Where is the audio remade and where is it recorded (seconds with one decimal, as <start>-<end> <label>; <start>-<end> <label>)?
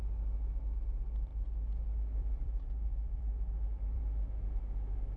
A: 0.0-2.2 recorded; 2.2-4.0 remade; 4.0-5.2 recorded